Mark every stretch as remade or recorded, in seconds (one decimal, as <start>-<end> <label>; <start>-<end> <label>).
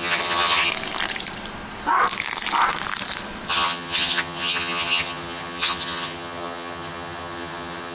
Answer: 0.0-0.7 remade; 0.7-3.5 recorded; 3.5-7.9 remade